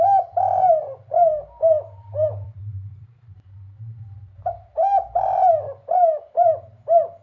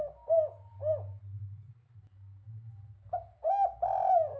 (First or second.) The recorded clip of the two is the second